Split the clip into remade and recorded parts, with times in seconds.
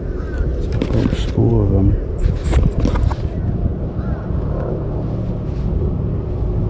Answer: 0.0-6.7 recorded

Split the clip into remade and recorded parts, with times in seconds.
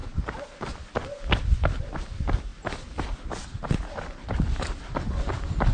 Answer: 0.0-5.7 recorded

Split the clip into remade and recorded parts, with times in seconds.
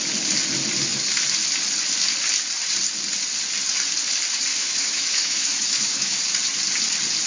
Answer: 0.0-4.5 recorded; 4.5-6.2 remade; 6.2-7.3 recorded